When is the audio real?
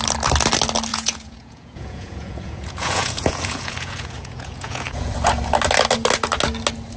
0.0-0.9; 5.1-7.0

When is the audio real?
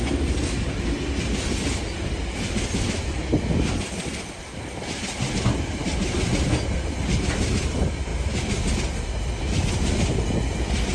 0.0-10.9